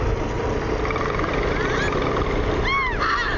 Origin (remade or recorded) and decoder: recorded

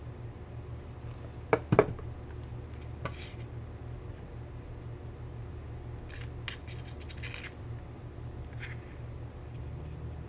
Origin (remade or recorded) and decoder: recorded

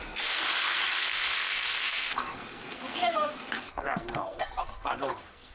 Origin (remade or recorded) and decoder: remade, codec, SNAC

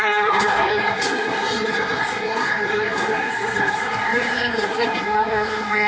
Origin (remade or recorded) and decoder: remade, codec, SNAC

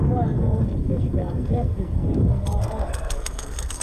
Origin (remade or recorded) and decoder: remade, codec, SNAC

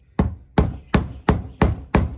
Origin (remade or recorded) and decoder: recorded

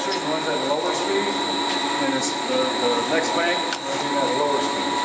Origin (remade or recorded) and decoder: recorded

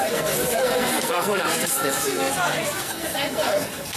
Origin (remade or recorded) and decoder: remade, codec, SNAC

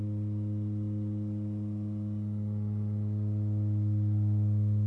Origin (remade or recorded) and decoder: recorded